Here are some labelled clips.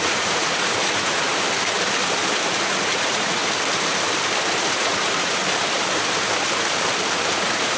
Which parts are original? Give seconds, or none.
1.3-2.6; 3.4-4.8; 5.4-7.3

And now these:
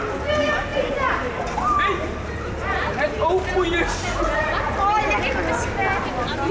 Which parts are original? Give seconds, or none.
0.0-6.5

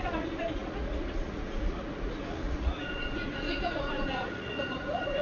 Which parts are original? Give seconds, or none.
none